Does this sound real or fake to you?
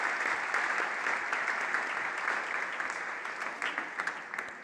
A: real